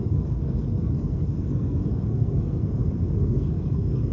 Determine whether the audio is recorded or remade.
remade